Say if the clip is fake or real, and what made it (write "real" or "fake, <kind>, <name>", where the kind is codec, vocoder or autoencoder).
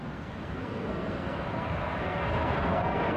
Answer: fake, codec, SNAC